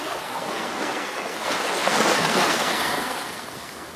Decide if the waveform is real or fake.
fake